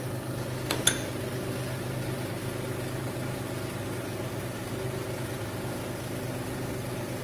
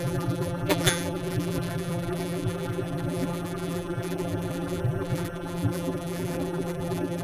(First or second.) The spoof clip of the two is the second